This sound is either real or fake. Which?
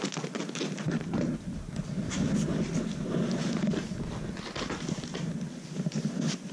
real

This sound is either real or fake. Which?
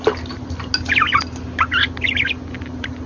real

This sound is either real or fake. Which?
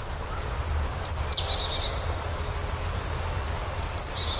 real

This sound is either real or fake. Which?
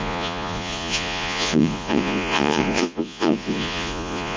fake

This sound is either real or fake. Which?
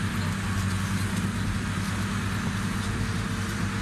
real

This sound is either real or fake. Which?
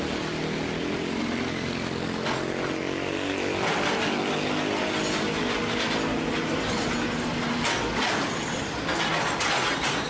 real